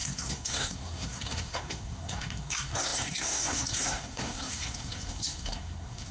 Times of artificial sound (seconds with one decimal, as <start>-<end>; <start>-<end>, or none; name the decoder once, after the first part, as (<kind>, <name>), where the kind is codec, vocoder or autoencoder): 0.0-6.1 (codec, SNAC)